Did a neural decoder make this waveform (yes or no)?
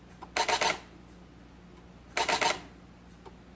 no